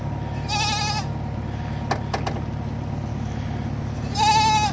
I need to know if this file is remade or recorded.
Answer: recorded